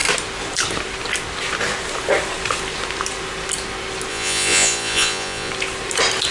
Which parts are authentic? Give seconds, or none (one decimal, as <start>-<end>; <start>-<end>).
0.0-4.1; 5.5-6.3